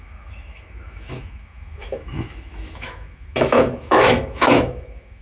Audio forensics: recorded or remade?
remade